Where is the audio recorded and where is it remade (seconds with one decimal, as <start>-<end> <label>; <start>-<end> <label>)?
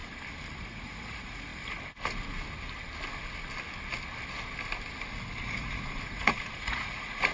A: 0.0-0.6 recorded; 0.6-1.5 remade; 1.5-5.5 recorded; 5.5-7.3 remade